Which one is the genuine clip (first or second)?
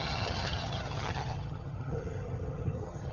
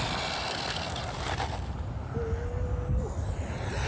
second